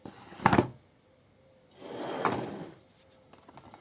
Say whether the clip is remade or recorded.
recorded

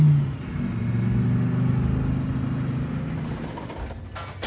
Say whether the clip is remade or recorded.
recorded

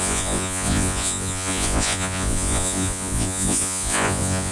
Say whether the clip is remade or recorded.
remade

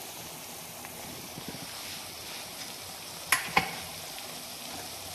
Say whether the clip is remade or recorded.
recorded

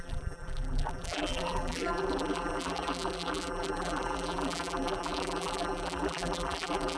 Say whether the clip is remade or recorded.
remade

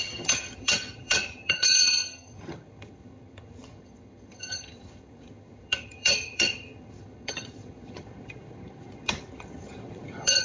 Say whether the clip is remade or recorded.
remade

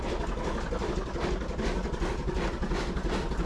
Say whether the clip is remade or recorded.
recorded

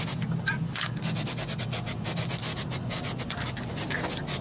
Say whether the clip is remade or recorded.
recorded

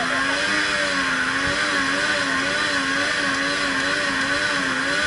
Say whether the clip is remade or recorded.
recorded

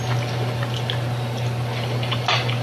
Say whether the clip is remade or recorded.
recorded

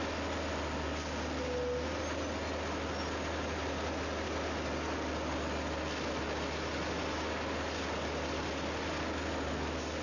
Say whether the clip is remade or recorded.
recorded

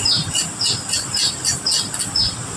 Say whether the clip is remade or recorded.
recorded